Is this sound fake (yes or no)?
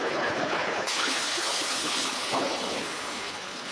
yes